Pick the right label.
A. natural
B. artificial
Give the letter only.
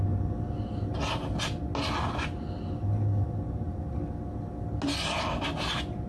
A